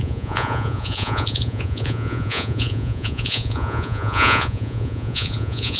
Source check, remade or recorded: remade